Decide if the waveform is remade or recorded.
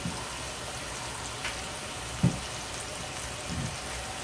recorded